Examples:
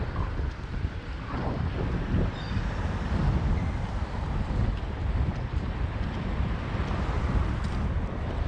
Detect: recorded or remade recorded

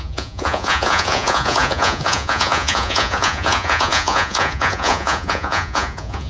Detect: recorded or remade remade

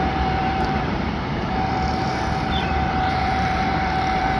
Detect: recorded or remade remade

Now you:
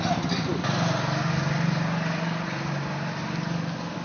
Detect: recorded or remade recorded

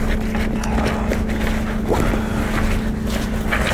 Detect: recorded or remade recorded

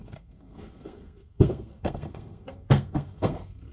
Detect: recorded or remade remade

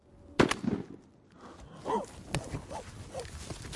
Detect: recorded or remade recorded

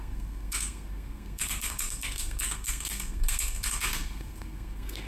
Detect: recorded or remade remade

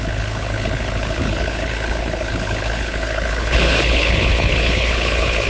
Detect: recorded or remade remade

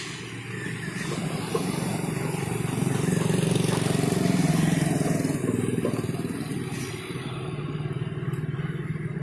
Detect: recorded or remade recorded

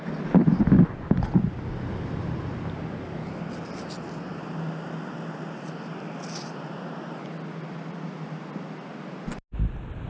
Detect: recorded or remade recorded